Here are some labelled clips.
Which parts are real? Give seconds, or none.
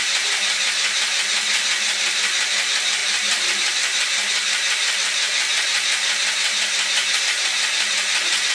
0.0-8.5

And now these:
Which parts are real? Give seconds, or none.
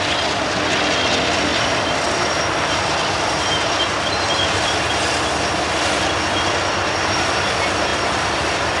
0.0-1.5; 5.4-7.9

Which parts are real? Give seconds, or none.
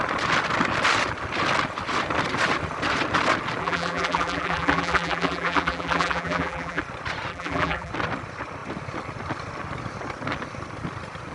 0.0-3.6; 6.8-7.3; 7.9-11.3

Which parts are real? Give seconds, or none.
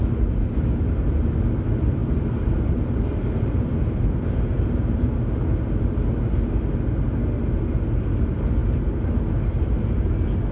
0.0-2.0; 3.7-4.5; 5.1-10.5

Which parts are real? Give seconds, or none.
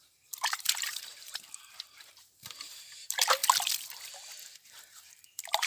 3.4-5.1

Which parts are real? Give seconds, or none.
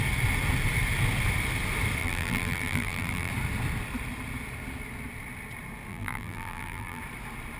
0.0-2.0; 3.3-5.9; 7.0-7.6